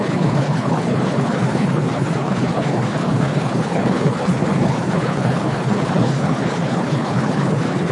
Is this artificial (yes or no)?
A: yes